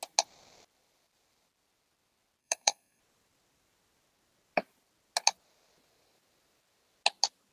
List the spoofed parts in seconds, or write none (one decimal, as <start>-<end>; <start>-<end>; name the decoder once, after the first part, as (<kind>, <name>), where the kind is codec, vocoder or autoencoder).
2.4-3.0 (codec, SNAC)